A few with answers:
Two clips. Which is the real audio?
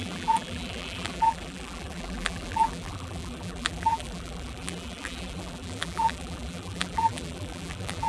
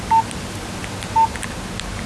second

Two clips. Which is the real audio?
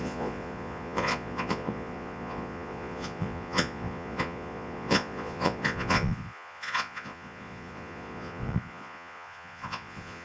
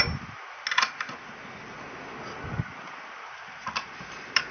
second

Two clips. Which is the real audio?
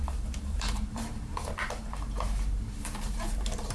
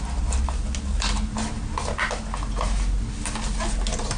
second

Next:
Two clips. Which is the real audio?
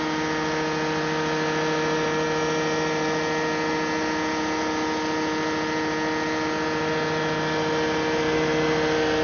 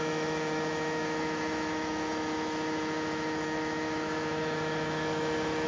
first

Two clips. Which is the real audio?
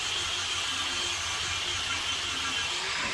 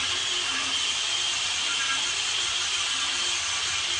first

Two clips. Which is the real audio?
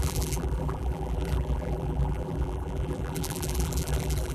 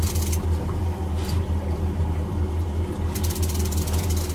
second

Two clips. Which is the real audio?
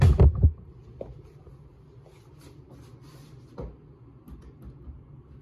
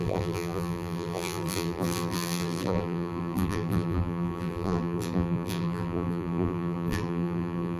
first